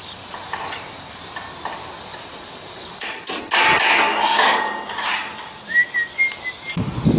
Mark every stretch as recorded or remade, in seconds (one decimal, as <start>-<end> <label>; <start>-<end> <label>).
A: 0.0-1.2 remade; 1.2-1.8 recorded; 1.8-3.4 remade; 3.4-4.1 recorded; 4.1-5.6 remade; 5.6-7.2 recorded